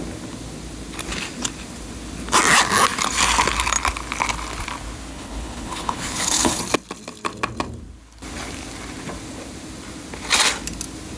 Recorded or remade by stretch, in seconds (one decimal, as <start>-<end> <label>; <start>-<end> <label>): 0.0-5.1 recorded; 5.1-6.6 remade; 6.6-11.2 recorded